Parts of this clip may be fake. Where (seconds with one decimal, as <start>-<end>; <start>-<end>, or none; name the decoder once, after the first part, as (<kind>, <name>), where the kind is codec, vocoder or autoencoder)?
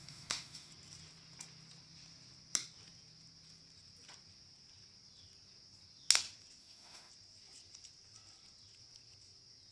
0.0-0.7 (autoencoder, DAC-VAE); 6.6-7.1